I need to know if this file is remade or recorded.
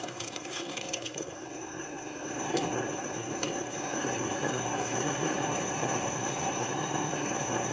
remade